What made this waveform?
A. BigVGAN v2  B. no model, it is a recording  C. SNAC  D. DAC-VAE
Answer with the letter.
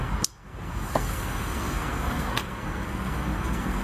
C